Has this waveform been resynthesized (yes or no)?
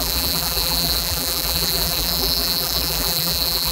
yes